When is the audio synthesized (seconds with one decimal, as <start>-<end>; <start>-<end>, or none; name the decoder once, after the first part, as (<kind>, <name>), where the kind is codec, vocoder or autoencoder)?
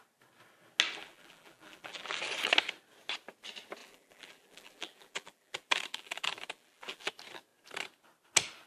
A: 1.0-2.2 (vocoder, BigVGAN v2); 3.8-7.1